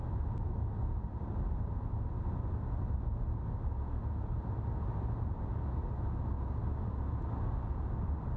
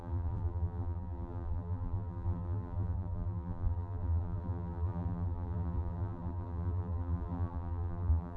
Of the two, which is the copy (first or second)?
second